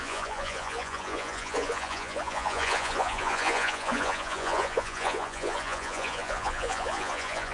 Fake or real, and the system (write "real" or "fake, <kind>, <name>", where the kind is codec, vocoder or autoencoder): fake, vocoder, Vocos